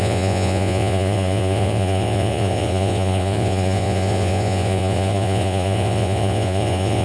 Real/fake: fake